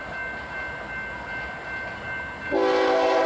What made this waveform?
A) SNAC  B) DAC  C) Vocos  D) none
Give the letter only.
D